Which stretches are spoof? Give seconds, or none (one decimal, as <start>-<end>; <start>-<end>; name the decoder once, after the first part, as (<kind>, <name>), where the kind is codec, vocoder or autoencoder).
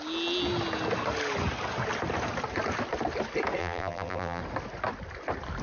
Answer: 3.6-4.4 (vocoder, BigVGAN v2)